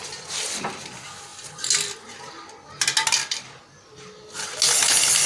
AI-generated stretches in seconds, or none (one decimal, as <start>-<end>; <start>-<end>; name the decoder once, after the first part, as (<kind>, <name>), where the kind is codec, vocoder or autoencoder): none